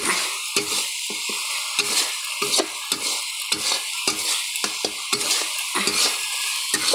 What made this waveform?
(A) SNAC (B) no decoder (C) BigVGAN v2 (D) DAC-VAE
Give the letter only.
B